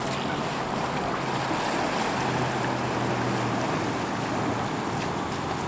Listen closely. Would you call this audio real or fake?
real